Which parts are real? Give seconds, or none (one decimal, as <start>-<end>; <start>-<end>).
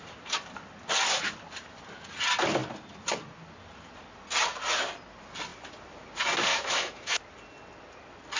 0.0-6.5; 7.2-8.4